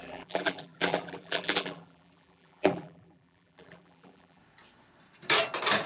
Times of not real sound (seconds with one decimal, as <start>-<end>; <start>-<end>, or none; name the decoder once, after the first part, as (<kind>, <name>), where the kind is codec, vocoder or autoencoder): 0.0-4.4 (vocoder, BigVGAN v2)